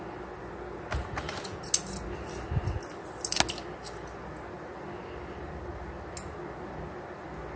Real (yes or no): yes